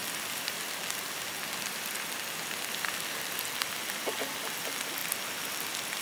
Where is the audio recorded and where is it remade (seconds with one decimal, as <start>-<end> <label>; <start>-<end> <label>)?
0.0-6.0 recorded